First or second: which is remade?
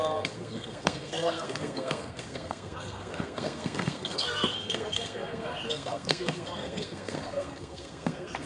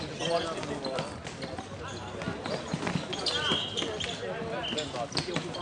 first